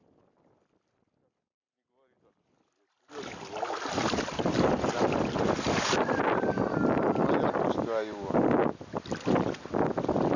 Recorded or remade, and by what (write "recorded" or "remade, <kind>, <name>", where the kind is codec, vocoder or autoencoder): recorded